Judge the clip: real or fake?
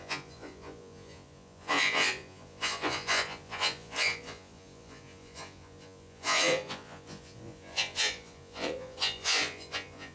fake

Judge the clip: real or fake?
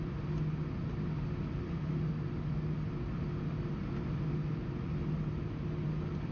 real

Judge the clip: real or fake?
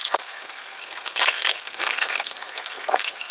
fake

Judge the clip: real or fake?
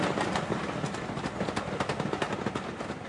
real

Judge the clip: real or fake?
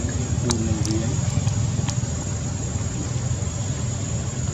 real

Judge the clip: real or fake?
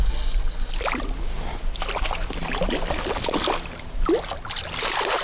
real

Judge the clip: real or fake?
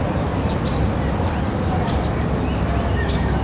real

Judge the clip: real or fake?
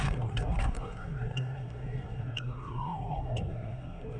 fake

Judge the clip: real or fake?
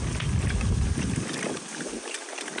real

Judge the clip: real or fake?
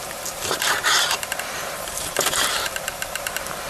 fake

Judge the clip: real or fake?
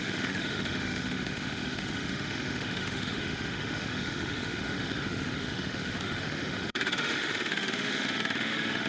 fake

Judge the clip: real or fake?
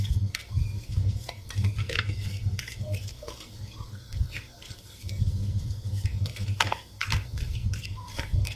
fake